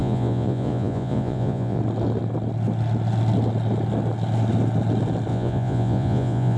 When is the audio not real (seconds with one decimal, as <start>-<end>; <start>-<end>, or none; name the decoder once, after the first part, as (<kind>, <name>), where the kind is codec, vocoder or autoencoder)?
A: 0.0-1.8 (vocoder, Vocos); 5.3-6.6